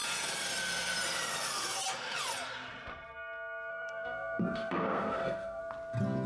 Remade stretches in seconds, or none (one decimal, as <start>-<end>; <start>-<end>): 3.7-5.6